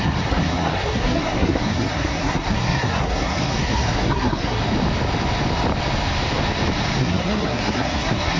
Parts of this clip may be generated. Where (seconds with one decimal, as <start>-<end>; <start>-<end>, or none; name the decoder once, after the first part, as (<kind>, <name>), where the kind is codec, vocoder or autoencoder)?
0.0-4.6 (codec, SNAC); 7.0-8.4